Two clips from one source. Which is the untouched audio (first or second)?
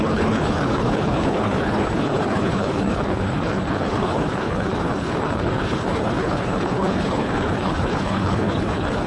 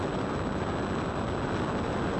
second